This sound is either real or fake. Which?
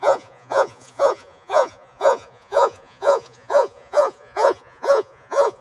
fake